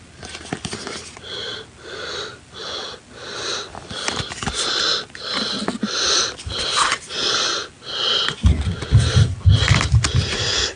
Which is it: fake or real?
real